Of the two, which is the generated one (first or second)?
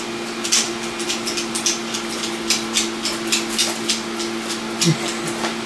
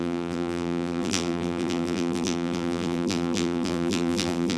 second